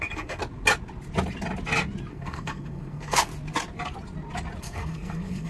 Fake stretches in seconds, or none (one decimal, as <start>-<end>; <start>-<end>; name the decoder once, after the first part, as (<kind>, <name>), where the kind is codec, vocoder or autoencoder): 0.0-0.4 (codec, SNAC); 2.1-3.3; 4.6-5.5